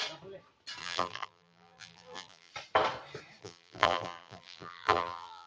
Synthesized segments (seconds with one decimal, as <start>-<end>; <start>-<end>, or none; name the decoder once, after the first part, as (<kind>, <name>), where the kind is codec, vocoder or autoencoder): 0.8-2.5 (vocoder, BigVGAN v2); 3.4-5.5